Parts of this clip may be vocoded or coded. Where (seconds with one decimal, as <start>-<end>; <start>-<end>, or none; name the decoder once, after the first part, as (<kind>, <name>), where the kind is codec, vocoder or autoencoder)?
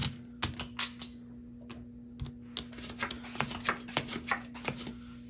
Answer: none